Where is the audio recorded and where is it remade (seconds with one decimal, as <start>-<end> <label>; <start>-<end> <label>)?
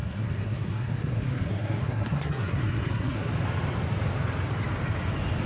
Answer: 0.0-3.3 remade; 3.3-5.5 recorded